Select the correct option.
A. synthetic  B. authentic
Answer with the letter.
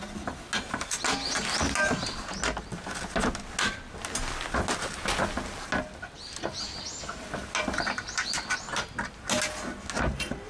B